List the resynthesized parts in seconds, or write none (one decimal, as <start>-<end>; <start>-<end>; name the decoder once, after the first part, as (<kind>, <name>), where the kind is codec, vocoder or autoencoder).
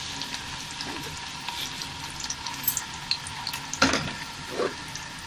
none